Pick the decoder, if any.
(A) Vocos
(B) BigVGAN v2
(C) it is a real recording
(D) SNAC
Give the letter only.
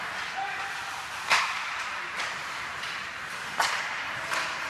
B